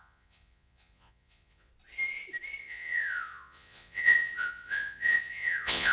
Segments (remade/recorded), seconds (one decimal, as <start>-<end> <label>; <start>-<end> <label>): 0.0-1.7 remade; 1.7-2.6 recorded; 2.6-5.9 remade